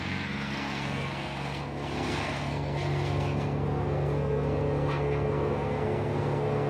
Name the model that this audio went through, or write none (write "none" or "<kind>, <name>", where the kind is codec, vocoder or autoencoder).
codec, SNAC